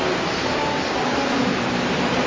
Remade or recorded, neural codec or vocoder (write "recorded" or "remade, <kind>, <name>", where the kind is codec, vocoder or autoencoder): recorded